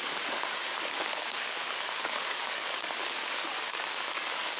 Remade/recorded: remade